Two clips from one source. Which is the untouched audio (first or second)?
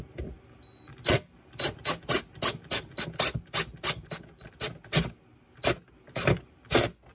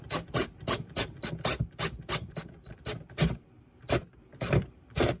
first